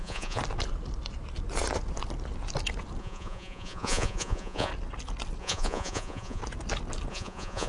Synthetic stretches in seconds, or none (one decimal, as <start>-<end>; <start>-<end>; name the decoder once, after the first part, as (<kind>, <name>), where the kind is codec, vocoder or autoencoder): 0.0-0.4 (vocoder, Vocos); 3.0-4.7; 5.4-6.4; 7.1-7.7